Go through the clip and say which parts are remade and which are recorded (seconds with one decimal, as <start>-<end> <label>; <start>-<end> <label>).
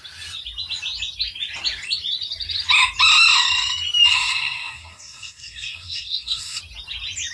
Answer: 0.0-4.1 recorded; 4.1-6.6 remade; 6.6-7.3 recorded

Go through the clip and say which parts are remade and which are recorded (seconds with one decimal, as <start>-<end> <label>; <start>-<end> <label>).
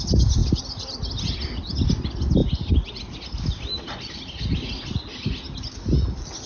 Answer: 0.0-6.5 recorded